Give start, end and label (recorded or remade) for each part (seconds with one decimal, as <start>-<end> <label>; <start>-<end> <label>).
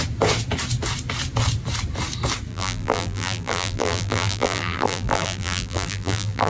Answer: 0.0-2.5 recorded; 2.5-6.5 remade